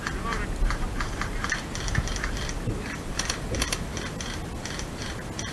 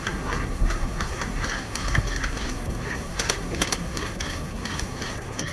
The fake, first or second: second